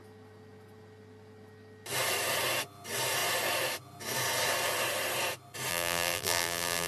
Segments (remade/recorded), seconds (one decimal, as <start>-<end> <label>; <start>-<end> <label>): 0.0-5.7 recorded; 5.7-6.9 remade